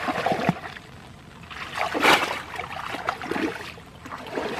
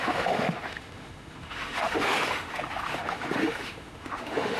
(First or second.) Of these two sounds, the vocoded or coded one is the second